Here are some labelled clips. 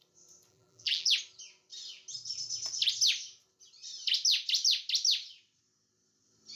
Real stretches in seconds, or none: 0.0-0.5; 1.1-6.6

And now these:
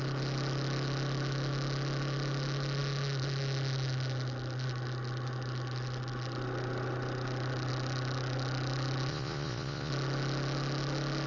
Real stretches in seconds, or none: 0.0-9.1; 9.9-11.3

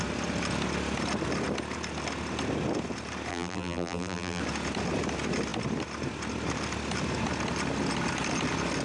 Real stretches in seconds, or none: 0.0-3.3; 4.4-8.8

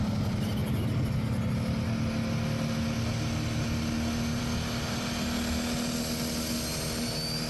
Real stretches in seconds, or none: 0.0-7.5

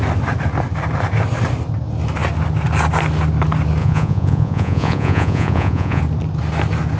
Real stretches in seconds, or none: 0.0-3.8; 6.0-7.0

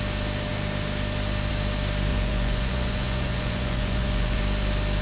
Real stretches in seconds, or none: 0.0-2.1; 4.4-5.0

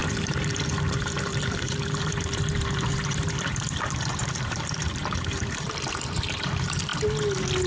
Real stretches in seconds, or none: 6.9-7.7